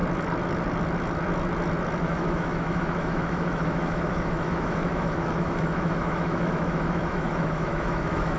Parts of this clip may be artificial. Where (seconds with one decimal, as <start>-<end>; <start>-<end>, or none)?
2.0-8.4